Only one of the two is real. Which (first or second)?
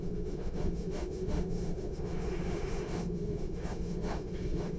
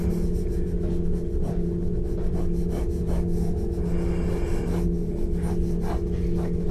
second